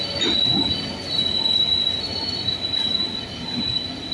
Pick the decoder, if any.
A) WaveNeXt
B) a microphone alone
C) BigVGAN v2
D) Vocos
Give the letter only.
B